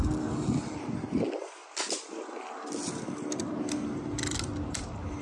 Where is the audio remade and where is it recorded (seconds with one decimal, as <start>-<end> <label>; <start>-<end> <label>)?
0.0-5.2 recorded